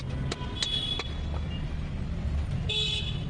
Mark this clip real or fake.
real